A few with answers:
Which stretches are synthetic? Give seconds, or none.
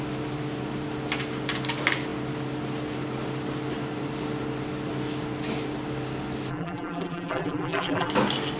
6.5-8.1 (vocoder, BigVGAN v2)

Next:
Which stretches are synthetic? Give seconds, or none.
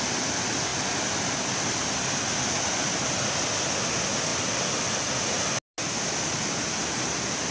4.3-5.1 (vocoder, BigVGAN v2)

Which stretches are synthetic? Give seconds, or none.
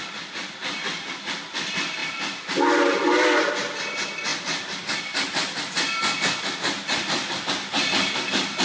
none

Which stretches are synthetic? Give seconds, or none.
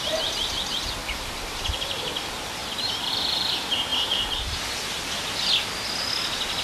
1.0-2.0 (vocoder, BigVGAN v2); 2.6-3.1; 3.9-4.7